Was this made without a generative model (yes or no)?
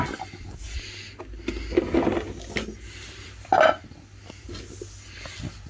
yes